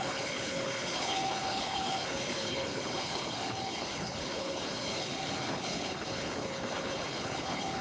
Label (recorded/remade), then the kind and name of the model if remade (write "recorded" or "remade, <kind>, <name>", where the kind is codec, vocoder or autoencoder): remade, codec, HILCodec